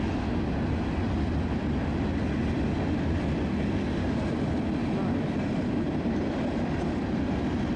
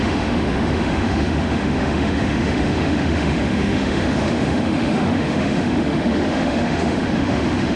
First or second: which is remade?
second